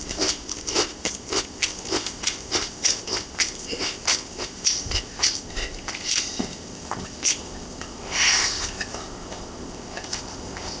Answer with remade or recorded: remade